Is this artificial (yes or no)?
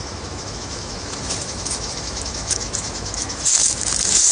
yes